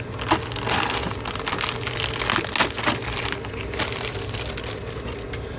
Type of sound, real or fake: real